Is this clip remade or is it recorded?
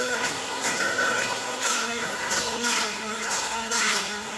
remade